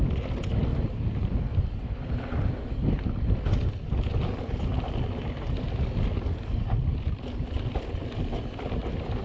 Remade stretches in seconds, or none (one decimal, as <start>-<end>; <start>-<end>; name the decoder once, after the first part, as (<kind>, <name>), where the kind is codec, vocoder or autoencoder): 0.7-3.1 (vocoder, BigVGAN v2)